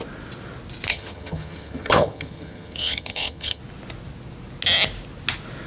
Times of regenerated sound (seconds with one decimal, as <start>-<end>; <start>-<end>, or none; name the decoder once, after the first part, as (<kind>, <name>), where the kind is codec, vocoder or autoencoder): 0.9-3.6 (vocoder, HiFi-GAN)